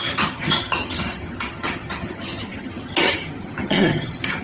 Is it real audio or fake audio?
fake